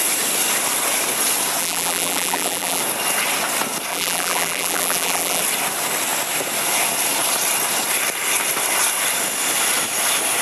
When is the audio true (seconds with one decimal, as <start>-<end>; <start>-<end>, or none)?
0.0-1.6; 2.8-3.9; 5.4-10.4